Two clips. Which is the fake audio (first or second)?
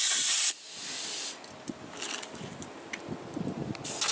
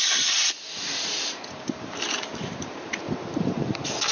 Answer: second